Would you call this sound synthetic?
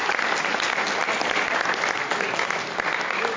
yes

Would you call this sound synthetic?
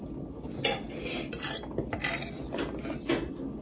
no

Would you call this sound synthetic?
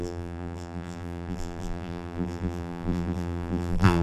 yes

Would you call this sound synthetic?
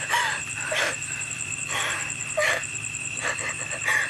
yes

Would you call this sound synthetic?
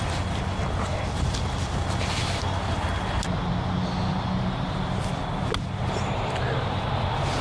no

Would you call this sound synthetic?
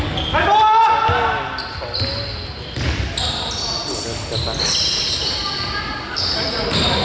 no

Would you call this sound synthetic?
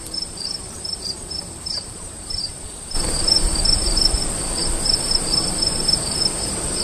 yes